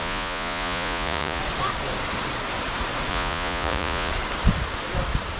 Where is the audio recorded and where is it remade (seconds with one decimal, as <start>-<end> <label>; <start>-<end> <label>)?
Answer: 0.0-1.4 remade; 1.4-3.1 recorded; 3.1-4.1 remade; 4.1-5.4 recorded